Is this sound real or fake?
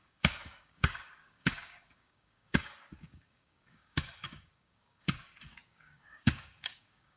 fake